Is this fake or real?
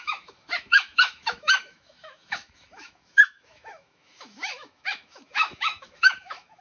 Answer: fake